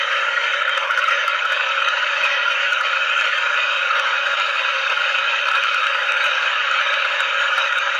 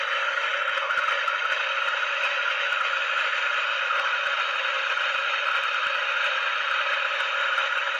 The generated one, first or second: first